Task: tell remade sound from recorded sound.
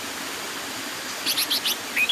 recorded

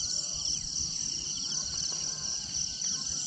recorded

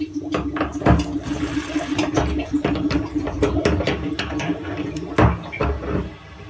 recorded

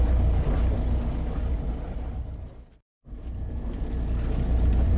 recorded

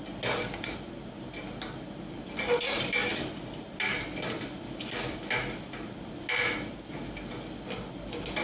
recorded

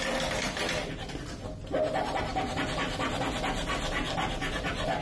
recorded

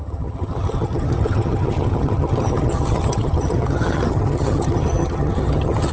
remade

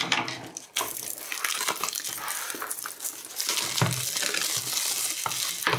recorded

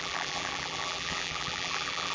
remade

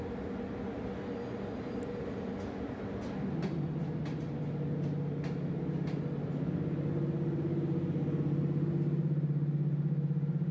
recorded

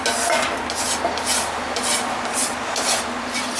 recorded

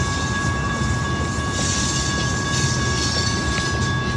recorded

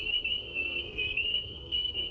remade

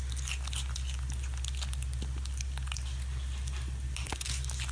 recorded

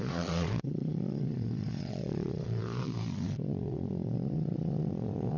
remade